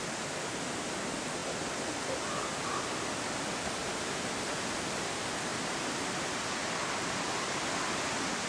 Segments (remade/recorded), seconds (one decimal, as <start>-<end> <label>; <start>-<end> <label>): 0.0-3.8 recorded; 3.8-4.6 remade; 4.6-5.5 recorded; 5.5-6.4 remade; 6.4-8.5 recorded